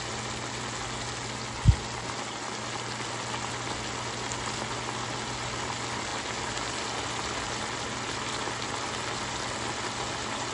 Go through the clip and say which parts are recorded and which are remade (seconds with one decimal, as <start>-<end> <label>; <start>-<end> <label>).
0.0-10.5 recorded

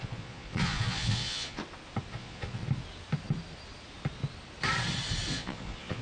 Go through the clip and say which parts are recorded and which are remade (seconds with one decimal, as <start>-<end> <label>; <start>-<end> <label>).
0.0-1.6 remade; 1.6-2.1 recorded; 2.1-2.6 remade; 2.6-5.3 recorded; 5.3-6.0 remade